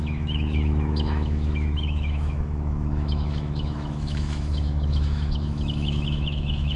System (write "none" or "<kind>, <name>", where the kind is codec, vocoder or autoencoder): autoencoder, DAC-VAE